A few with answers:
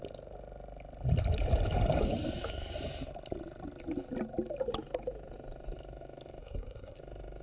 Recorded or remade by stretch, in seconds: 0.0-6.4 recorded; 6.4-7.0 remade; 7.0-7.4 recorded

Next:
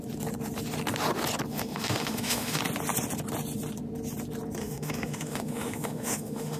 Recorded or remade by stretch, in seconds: 0.0-1.5 recorded; 1.5-2.6 remade; 2.6-4.6 recorded; 4.6-6.6 remade

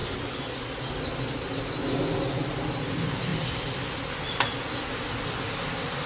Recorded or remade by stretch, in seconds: 0.0-6.1 recorded

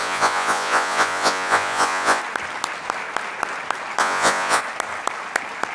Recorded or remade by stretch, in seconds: 0.0-2.2 remade; 2.2-4.0 recorded; 4.0-4.6 remade; 4.6-5.7 recorded

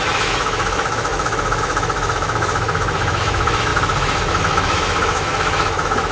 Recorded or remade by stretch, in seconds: 0.0-6.1 remade